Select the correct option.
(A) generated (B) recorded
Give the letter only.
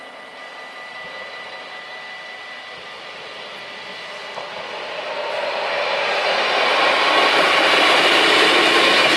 B